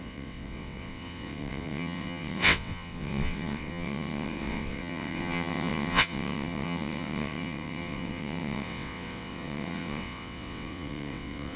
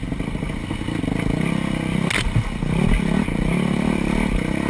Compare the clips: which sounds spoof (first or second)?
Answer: first